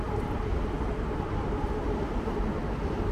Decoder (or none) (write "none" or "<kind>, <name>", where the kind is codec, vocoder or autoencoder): none